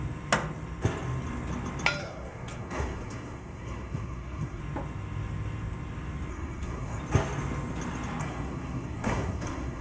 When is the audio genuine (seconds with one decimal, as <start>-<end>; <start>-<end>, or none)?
0.0-2.0; 4.6-6.3; 7.0-8.2